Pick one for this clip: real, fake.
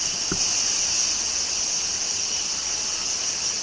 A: real